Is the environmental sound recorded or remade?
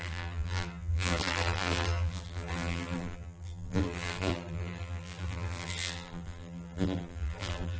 remade